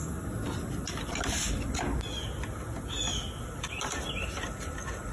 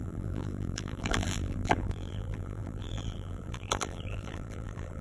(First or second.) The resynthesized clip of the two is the second